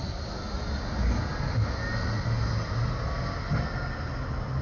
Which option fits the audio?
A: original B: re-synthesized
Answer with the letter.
A